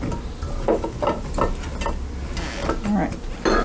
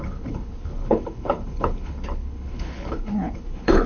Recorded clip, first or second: first